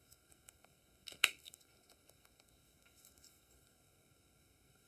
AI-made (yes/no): yes